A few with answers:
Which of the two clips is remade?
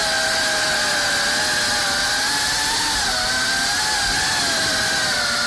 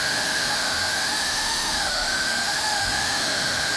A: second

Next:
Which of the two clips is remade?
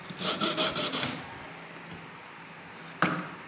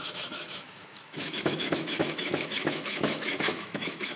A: second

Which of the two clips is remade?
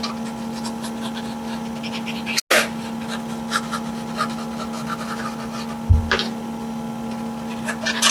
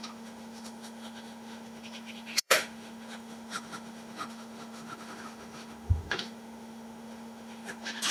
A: second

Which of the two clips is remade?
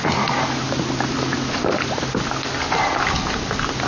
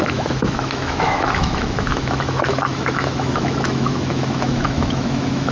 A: second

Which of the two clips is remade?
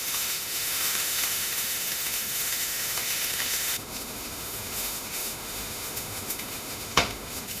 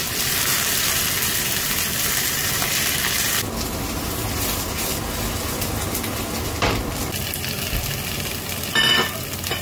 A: first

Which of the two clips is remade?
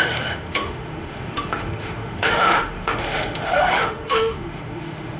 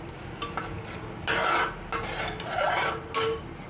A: first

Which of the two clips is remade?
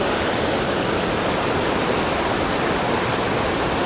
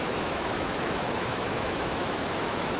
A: second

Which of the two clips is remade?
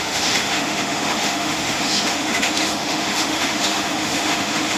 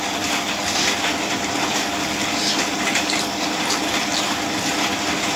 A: first